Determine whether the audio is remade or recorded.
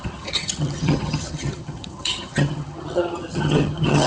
remade